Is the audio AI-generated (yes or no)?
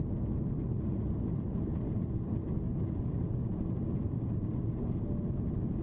no